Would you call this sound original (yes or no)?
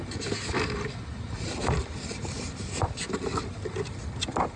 yes